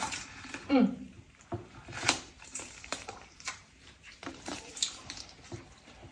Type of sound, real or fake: fake